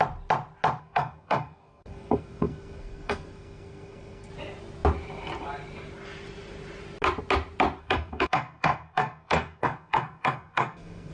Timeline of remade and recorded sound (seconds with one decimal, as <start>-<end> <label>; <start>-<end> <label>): 0.0-0.8 recorded; 0.8-4.3 remade; 4.3-7.8 recorded; 7.8-11.1 remade